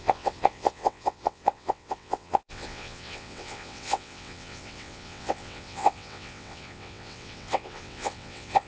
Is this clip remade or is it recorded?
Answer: remade